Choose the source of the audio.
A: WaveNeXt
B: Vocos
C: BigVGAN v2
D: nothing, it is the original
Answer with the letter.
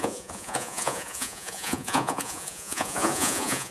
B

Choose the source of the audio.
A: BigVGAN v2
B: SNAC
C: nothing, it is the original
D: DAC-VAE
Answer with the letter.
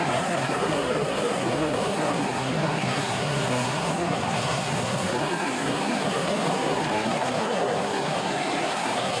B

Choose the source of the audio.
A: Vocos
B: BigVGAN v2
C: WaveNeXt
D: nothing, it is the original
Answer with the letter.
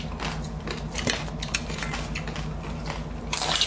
D